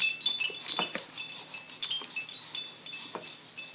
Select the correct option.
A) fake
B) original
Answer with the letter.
B